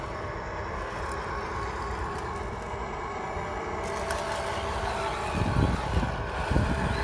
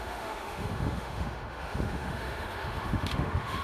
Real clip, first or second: first